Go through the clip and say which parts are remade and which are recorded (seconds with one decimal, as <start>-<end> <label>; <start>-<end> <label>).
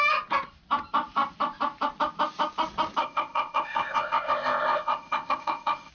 0.0-3.0 recorded; 3.0-5.9 remade